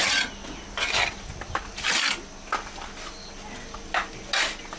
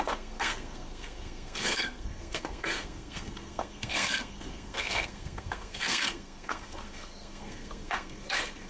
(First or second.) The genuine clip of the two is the first